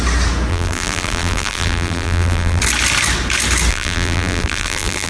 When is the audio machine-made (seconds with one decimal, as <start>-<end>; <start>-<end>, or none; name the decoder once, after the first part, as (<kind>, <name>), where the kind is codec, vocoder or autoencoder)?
0.5-2.6 (vocoder, BigVGAN v2); 3.7-5.1